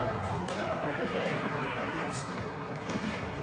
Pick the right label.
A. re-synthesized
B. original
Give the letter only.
A